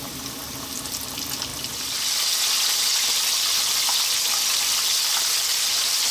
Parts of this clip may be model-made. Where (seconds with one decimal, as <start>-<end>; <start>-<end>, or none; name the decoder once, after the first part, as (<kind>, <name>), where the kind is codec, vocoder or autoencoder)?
none